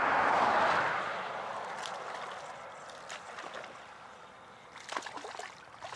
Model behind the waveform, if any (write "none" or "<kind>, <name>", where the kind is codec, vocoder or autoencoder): none